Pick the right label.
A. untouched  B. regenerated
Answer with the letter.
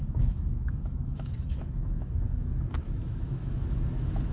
B